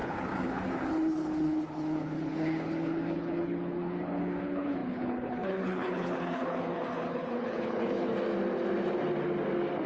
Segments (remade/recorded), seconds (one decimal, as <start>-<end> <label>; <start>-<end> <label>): 0.0-8.1 remade; 8.1-9.9 recorded